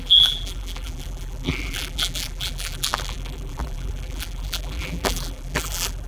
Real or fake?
fake